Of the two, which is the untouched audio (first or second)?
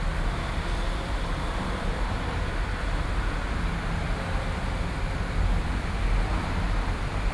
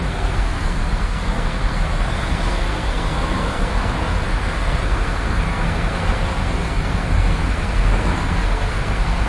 first